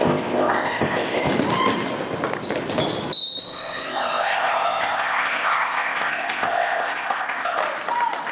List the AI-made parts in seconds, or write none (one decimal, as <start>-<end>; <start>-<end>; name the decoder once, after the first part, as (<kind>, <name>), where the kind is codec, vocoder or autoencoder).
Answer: 0.0-1.3 (codec, ZipCodec); 3.4-7.6